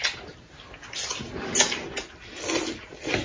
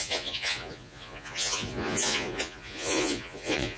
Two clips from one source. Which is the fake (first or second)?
second